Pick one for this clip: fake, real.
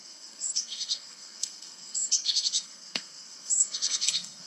fake